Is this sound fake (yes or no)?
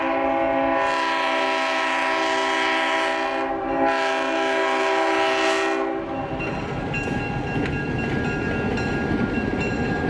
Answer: no